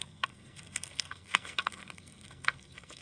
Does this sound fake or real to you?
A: fake